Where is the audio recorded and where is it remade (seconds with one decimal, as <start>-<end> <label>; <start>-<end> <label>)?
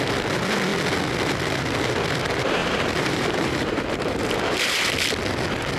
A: 0.0-2.6 recorded; 2.6-4.9 remade; 4.9-5.8 recorded